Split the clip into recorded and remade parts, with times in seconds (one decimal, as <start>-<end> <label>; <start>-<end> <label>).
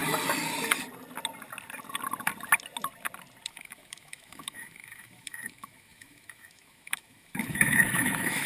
0.0-3.5 recorded; 3.5-8.5 remade